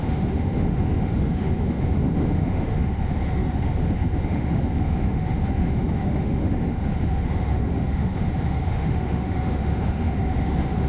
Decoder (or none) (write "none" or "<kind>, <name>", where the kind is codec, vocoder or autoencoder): autoencoder, DAC-VAE